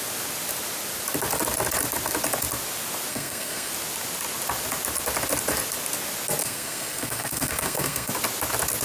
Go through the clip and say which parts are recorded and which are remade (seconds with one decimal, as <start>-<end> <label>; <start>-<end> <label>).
0.0-3.1 recorded; 3.1-3.7 remade; 3.7-6.4 recorded; 6.4-8.1 remade; 8.1-8.8 recorded